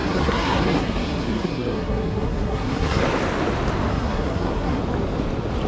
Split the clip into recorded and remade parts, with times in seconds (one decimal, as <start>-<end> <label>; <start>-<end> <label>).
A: 0.0-3.0 remade; 3.0-3.9 recorded; 3.9-4.8 remade; 4.8-5.7 recorded